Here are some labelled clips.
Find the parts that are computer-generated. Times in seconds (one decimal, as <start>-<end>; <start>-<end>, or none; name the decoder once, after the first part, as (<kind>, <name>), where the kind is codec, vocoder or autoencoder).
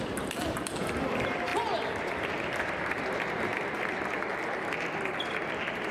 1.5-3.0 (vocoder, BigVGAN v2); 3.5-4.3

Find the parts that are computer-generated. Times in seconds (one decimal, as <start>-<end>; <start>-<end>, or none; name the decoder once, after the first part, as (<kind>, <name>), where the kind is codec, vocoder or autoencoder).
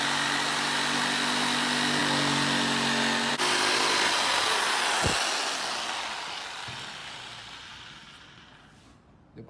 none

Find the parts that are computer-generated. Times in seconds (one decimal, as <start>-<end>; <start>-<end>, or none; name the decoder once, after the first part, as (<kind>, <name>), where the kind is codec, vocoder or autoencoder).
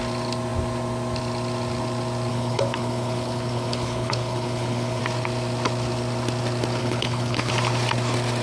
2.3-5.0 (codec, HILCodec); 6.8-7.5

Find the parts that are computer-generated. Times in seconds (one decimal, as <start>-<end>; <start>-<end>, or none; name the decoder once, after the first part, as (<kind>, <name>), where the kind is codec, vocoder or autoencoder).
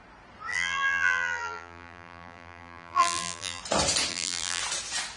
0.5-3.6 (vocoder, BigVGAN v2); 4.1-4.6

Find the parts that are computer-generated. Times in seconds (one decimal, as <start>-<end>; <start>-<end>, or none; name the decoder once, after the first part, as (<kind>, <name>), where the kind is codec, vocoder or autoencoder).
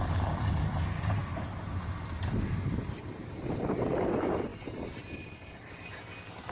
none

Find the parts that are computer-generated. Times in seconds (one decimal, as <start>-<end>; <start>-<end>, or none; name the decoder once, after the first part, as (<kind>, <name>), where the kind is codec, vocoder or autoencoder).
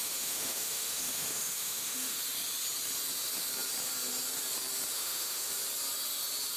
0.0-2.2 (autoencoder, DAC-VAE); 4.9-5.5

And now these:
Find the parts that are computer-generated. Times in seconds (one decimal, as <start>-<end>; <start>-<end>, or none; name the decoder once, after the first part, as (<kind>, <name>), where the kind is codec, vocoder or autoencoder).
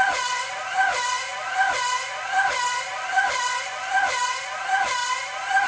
2.9-4.2 (vocoder, BigVGAN v2); 5.0-5.7